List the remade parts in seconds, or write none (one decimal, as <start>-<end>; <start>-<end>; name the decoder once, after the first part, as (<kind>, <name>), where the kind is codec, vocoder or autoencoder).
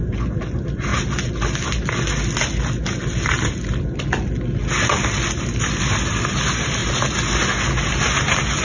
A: 0.0-0.9 (vocoder, BigVGAN v2); 5.4-6.8; 7.9-8.6